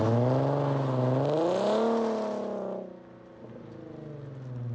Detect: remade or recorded recorded